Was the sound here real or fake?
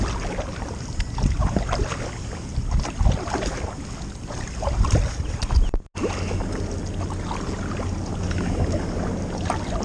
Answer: real